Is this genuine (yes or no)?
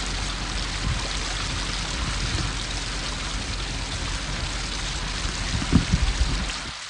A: yes